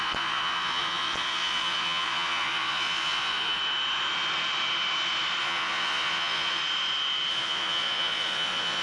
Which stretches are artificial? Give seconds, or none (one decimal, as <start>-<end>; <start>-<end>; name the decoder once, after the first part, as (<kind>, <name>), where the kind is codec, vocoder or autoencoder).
0.0-3.6 (vocoder, Vocos); 5.4-6.6; 7.3-8.8